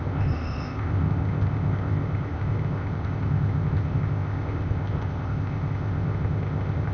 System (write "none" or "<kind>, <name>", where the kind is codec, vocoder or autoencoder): codec, ZipCodec